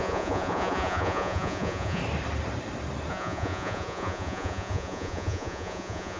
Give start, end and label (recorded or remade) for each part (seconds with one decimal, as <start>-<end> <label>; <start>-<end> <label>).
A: 0.0-2.0 remade; 2.0-3.1 recorded; 3.1-6.2 remade